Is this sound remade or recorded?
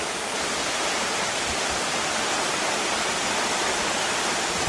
remade